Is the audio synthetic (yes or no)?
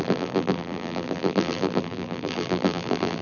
yes